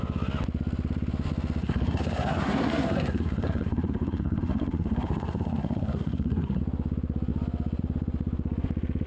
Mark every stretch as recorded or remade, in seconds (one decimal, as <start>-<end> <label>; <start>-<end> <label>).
0.0-1.6 recorded; 1.6-6.6 remade; 6.6-9.1 recorded